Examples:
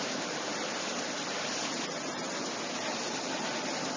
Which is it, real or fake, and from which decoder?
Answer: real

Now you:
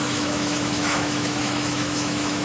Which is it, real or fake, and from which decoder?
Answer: fake, autoencoder, DAC-VAE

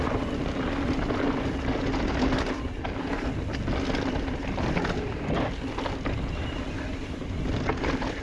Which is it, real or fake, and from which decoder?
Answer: real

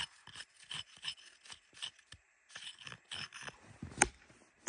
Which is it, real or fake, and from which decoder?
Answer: real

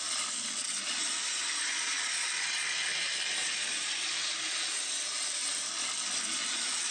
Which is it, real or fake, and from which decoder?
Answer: real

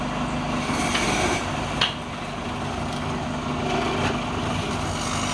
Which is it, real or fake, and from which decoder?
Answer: real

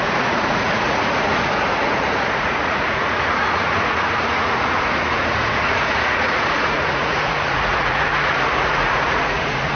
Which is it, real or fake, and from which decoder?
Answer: fake, vocoder, Vocos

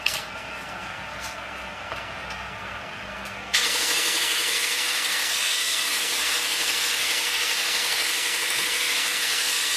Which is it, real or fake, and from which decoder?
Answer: fake, codec, SNAC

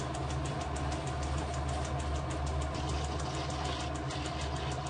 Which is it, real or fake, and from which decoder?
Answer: real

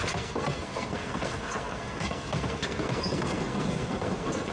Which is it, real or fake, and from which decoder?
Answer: fake, codec, SNAC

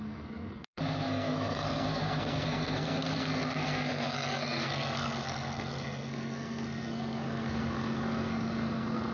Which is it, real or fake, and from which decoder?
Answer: fake, codec, SNAC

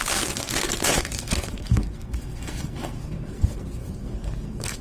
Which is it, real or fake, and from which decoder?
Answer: fake, codec, SNAC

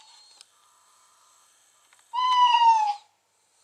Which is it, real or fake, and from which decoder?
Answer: real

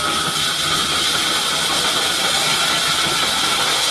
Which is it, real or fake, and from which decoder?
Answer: fake, vocoder, BigVGAN v2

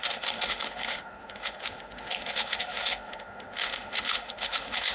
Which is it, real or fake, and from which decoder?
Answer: fake, autoencoder, DAC-VAE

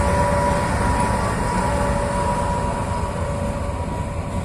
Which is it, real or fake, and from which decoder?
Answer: real